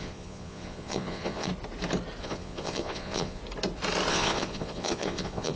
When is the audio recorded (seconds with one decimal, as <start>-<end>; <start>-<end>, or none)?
1.5-2.2; 3.4-4.1